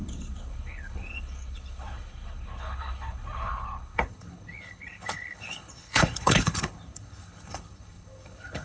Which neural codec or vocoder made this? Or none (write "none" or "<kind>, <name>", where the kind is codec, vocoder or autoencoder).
codec, HILCodec